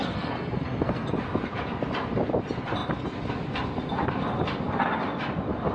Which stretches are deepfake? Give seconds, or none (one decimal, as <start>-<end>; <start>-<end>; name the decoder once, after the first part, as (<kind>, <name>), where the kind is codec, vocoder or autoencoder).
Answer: 0.0-1.1 (codec, SNAC)